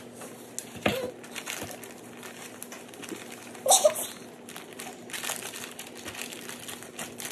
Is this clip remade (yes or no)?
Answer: no